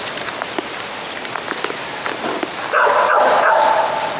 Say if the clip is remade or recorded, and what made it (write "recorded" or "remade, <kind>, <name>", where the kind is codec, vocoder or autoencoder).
recorded